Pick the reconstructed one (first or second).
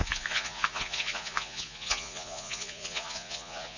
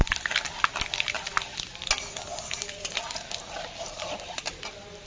first